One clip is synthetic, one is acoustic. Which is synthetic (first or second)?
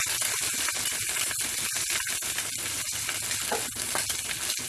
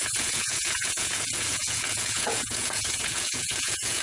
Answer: second